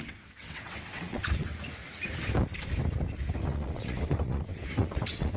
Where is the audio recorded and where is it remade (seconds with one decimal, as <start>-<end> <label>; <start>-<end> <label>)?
0.0-1.5 remade; 1.5-3.4 recorded; 3.4-5.4 remade